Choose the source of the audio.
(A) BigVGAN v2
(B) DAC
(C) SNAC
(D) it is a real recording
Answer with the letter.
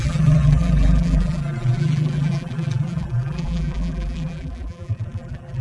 A